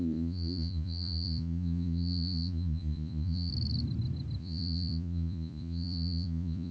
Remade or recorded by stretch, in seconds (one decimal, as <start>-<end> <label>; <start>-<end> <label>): 0.0-3.5 remade; 3.5-4.4 recorded; 4.4-6.7 remade